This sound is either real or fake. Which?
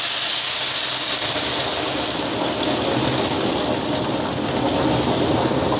real